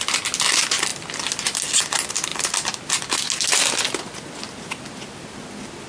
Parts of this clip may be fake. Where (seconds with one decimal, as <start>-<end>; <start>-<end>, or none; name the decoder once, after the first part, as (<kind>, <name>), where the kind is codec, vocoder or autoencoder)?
none